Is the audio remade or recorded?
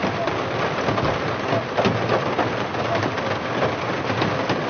recorded